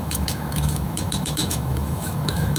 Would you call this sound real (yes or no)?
no